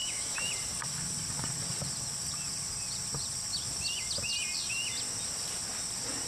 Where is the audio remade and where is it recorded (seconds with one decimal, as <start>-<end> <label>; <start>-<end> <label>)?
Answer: 0.0-0.5 remade; 0.5-6.3 recorded